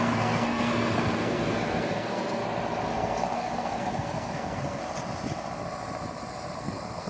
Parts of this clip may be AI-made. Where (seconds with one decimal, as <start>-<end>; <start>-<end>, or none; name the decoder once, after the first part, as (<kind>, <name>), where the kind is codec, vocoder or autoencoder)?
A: 0.0-2.4 (codec, SNAC); 2.9-4.8; 6.6-7.1